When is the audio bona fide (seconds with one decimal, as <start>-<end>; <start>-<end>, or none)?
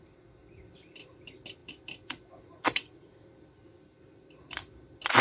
0.0-1.6; 4.7-5.2